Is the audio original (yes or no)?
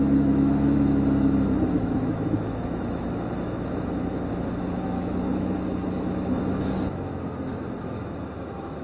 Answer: no